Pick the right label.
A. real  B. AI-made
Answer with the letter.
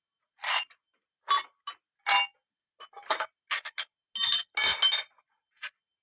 A